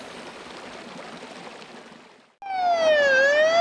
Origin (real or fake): real